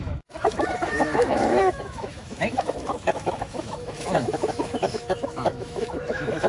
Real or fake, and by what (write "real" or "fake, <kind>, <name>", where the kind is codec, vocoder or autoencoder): fake, autoencoder, DAC-VAE